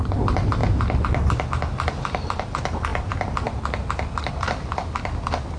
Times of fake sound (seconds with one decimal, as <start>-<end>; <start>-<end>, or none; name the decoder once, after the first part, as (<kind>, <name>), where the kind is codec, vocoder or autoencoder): none